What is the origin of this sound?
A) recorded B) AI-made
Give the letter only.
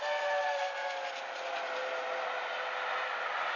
A